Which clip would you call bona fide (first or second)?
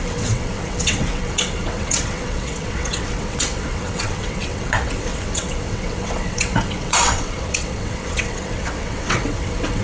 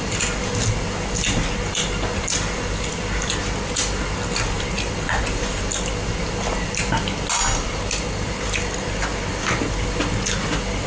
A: second